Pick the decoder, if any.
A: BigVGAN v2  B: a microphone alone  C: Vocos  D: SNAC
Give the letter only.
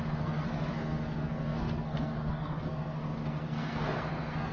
D